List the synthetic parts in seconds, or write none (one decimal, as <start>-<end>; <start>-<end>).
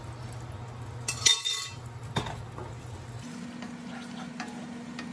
none